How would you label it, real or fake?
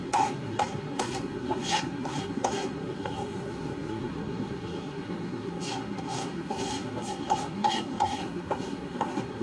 fake